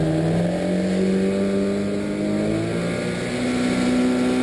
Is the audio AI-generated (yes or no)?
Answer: no